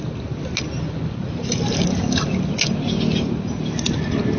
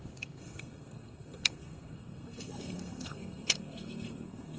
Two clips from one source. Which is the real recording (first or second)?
first